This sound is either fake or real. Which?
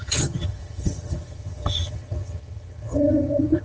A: fake